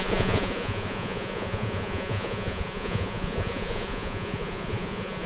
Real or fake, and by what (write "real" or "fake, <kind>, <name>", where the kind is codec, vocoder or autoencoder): fake, vocoder, Vocos